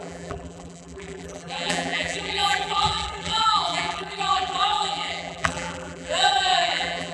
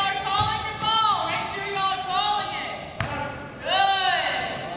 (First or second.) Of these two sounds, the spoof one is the first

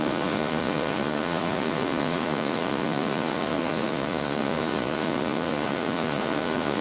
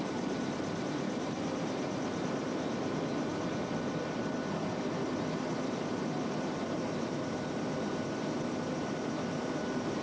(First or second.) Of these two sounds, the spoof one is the first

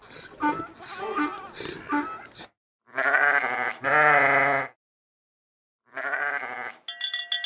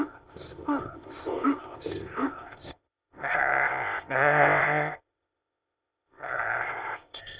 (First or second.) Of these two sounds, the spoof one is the second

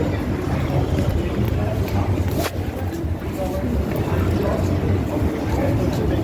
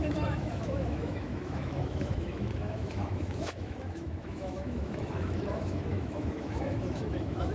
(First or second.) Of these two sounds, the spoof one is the second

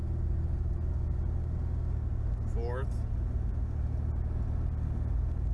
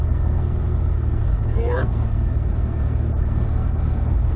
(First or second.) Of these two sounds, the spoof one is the second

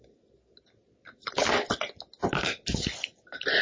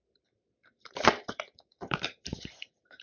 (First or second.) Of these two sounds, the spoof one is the second